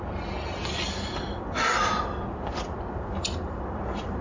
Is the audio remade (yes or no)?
no